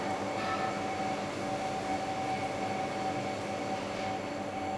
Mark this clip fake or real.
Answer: real